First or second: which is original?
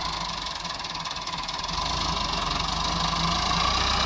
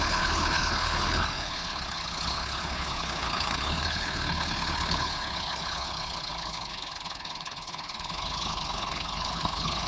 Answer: first